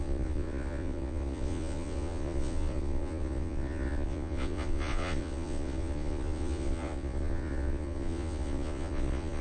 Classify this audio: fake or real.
fake